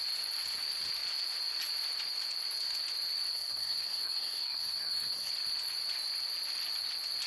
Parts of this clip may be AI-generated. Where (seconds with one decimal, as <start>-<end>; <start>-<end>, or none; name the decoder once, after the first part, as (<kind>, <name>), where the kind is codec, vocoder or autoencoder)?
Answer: 3.3-5.3 (codec, SNAC)